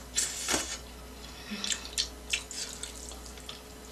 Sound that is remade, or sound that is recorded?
recorded